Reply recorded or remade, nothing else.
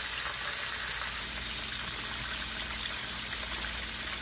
recorded